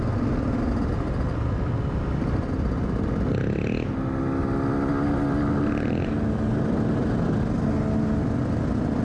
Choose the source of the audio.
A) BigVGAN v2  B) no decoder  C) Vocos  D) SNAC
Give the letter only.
B